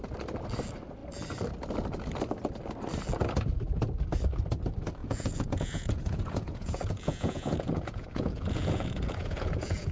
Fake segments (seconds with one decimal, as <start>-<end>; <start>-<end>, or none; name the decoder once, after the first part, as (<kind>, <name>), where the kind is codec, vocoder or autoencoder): 5.0-9.9 (vocoder, Vocos)